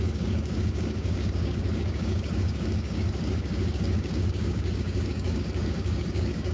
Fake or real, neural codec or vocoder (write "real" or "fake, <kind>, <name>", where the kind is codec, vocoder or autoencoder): fake, codec, DAC